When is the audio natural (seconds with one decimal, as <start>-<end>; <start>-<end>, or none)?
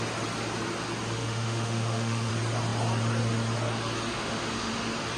0.0-1.2; 2.3-4.1; 4.7-5.2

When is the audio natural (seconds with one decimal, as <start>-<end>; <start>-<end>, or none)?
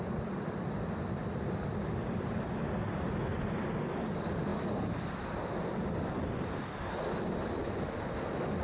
0.0-8.6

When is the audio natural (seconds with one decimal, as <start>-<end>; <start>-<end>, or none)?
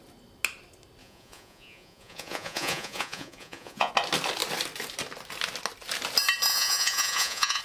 0.0-1.0; 3.9-6.5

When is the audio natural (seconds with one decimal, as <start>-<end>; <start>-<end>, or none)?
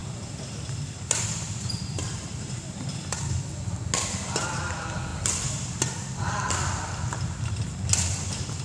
2.8-8.6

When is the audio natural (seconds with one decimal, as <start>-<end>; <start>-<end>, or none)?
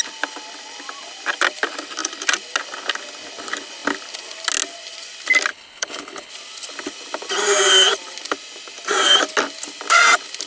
0.0-5.5; 6.3-10.5